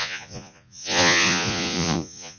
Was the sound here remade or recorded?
remade